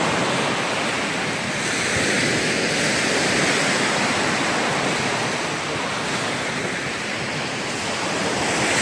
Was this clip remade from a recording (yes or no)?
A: no